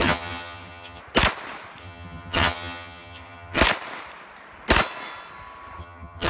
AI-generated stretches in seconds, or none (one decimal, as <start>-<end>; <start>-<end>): 0.0-1.0; 1.8-3.6; 5.8-6.3